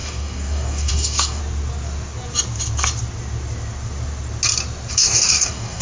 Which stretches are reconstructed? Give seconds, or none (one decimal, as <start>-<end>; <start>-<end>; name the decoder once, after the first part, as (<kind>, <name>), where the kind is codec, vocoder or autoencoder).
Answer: 0.0-1.4 (codec, DAC); 4.9-5.8